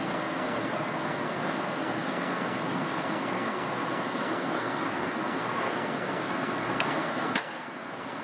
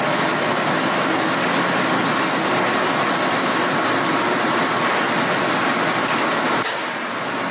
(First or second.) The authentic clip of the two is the second